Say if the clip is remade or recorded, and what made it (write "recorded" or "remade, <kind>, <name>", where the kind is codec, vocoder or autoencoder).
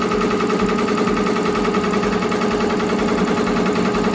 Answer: recorded